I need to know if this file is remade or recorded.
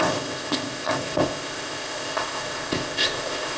remade